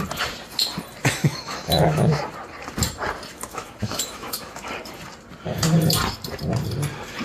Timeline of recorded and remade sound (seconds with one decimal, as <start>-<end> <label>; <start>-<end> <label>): 0.0-1.0 recorded; 1.0-2.2 remade; 2.2-3.3 recorded; 3.3-4.7 remade; 4.7-7.2 recorded